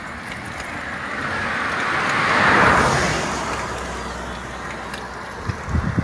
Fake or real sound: real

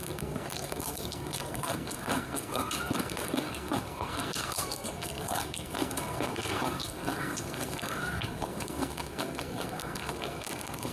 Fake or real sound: fake